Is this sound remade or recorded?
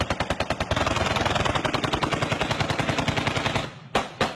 recorded